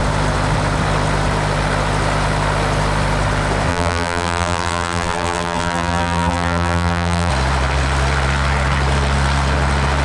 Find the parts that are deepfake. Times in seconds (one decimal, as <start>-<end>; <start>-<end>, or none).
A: 3.7-7.3